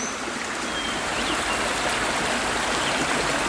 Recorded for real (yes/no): yes